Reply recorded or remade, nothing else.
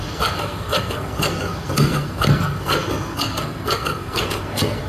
remade